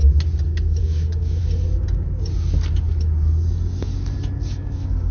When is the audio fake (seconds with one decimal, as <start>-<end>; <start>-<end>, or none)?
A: 0.8-1.4; 4.5-5.1